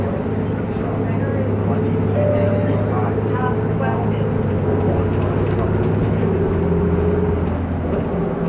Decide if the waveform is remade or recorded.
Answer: recorded